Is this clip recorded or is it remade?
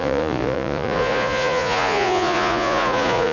remade